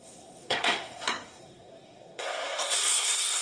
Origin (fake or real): fake